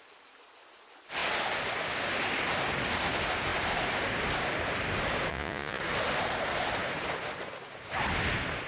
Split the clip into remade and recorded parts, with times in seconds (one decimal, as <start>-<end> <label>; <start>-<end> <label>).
0.0-5.3 recorded; 5.3-5.8 remade; 5.8-8.7 recorded